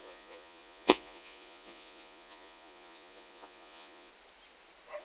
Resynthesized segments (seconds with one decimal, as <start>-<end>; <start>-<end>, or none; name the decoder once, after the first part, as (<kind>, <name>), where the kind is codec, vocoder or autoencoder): 0.0-4.1 (vocoder, Vocos)